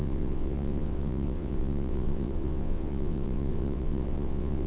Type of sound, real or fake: fake